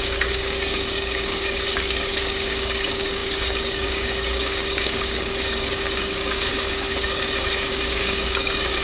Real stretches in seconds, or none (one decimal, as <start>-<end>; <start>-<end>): none